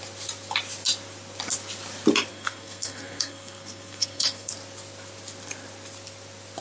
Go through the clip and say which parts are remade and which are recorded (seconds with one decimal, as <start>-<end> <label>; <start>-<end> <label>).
0.0-2.3 recorded; 2.3-4.5 remade; 4.5-6.6 recorded